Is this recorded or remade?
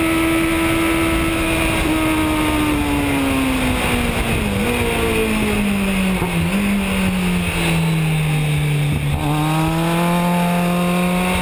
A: recorded